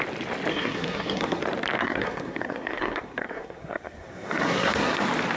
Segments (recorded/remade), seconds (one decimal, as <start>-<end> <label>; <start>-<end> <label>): 0.0-0.5 recorded; 0.5-1.4 remade; 1.4-1.8 recorded; 1.8-5.0 remade; 5.0-5.4 recorded

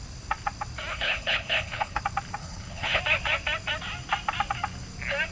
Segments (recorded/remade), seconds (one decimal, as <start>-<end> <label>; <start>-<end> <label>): 0.0-0.9 recorded; 0.9-2.0 remade; 2.0-2.4 recorded; 2.4-3.0 remade; 3.0-5.3 recorded

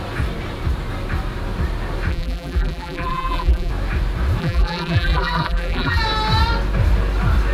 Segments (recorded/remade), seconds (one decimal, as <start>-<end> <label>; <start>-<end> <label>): 0.0-2.1 recorded; 2.1-3.7 remade; 3.7-4.4 recorded; 4.4-6.0 remade; 6.0-7.5 recorded

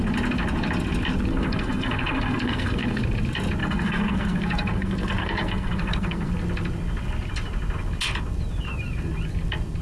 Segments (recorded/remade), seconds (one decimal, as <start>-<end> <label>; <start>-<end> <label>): 0.0-1.3 recorded; 1.3-3.0 remade; 3.0-3.6 recorded; 3.6-6.3 remade; 6.3-9.8 recorded

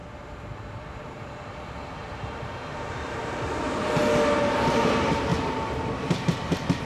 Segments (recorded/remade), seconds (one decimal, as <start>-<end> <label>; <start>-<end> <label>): 0.0-0.7 recorded; 0.7-4.0 remade; 4.0-4.7 recorded; 4.7-5.3 remade; 5.3-6.1 recorded; 6.1-6.9 remade

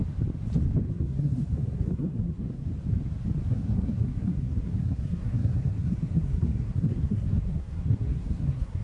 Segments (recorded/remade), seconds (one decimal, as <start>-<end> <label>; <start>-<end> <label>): 0.0-0.9 recorded; 0.9-2.7 remade; 2.7-3.5 recorded; 3.5-8.8 remade